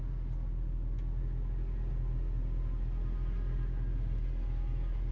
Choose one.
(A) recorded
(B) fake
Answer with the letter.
A